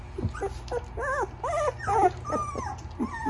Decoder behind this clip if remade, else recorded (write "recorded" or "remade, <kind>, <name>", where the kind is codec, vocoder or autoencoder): recorded